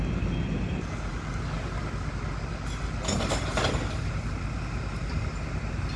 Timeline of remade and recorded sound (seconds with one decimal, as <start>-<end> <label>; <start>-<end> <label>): 0.0-6.0 recorded